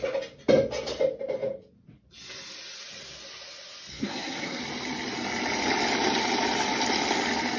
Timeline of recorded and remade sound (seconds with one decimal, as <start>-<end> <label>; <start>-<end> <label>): 0.0-3.9 recorded; 3.9-4.6 remade; 4.6-7.6 recorded